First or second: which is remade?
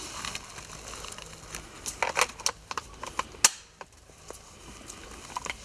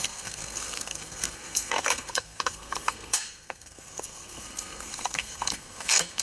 second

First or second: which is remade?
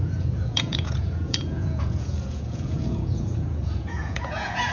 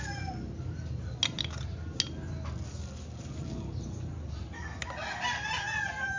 first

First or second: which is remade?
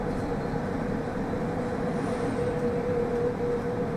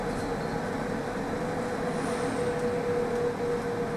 first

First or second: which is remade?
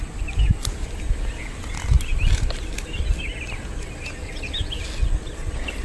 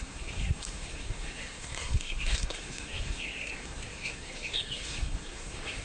second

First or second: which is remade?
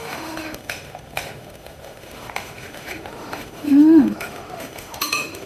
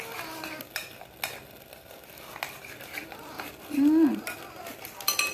first